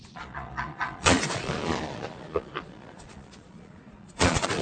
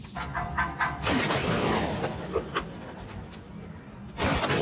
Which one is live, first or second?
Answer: second